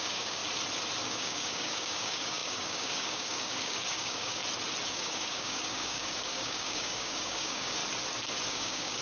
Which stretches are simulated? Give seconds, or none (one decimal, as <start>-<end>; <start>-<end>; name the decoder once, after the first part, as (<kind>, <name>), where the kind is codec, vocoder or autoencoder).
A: 0.0-0.4 (codec, DAC); 1.0-4.4; 4.9-7.8; 8.5-9.0